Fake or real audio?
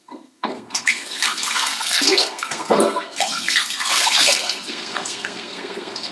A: fake